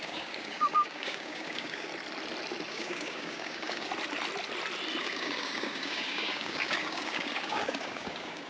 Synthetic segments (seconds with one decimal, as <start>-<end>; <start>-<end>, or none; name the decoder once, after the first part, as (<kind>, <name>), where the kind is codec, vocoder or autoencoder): 0.0-1.9 (codec, DAC); 2.7-3.9; 5.0-8.5